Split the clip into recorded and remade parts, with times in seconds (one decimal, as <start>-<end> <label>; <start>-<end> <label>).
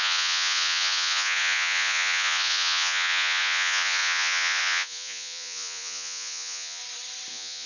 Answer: 0.0-6.8 remade; 6.8-7.3 recorded; 7.3-7.7 remade